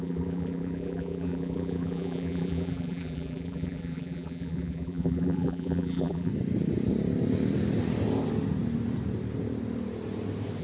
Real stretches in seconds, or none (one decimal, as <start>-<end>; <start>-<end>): 6.3-10.6